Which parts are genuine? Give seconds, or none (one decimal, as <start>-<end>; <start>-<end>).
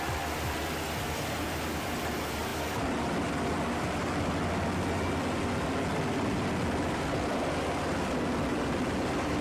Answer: 0.0-9.4